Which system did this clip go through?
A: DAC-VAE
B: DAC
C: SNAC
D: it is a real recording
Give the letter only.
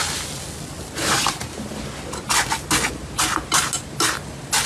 D